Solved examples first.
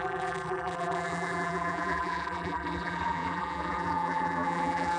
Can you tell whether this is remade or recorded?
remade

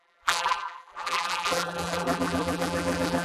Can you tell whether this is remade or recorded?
remade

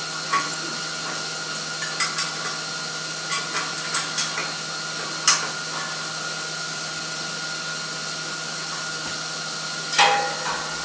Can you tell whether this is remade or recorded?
recorded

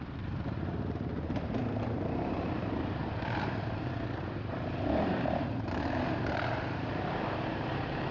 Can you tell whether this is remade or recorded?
remade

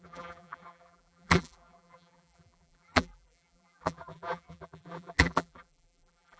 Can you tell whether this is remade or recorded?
remade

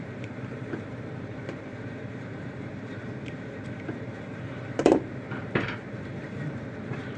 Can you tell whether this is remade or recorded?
remade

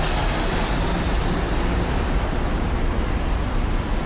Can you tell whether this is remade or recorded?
remade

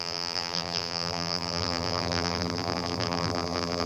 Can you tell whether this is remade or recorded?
remade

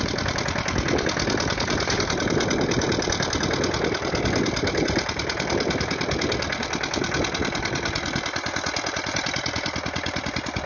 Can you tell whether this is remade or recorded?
remade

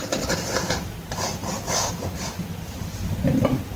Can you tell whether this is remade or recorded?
remade